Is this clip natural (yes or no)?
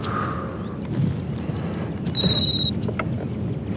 yes